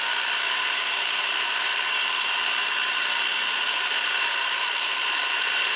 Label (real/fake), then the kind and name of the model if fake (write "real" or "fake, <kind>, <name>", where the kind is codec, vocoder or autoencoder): fake, vocoder, BigVGAN v2